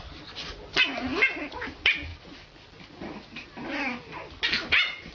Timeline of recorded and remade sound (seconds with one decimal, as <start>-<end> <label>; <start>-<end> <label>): 0.0-5.1 recorded